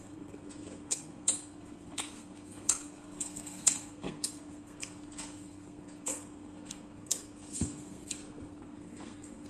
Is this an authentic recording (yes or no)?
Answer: no